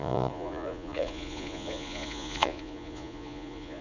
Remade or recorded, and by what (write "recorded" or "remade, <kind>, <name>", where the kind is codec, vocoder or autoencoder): remade, vocoder, Vocos